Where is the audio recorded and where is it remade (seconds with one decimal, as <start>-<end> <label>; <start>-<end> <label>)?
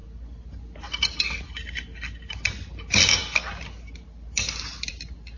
0.0-5.4 recorded